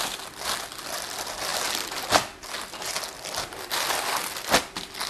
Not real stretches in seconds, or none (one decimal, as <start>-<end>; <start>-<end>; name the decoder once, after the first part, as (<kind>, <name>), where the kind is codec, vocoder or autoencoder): none